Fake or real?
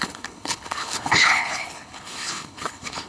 fake